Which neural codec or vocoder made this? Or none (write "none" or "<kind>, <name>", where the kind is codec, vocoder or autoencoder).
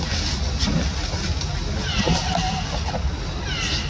none